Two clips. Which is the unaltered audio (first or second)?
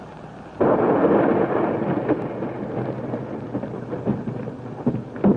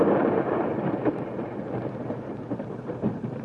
first